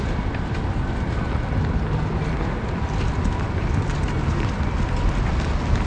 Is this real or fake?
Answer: real